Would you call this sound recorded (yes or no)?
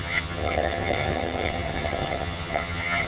no